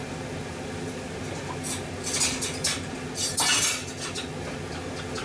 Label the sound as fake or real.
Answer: real